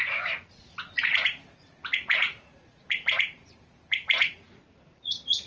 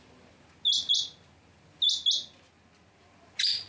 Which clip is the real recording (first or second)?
second